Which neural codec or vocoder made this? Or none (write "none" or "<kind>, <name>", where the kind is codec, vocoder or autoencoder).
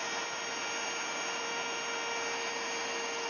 none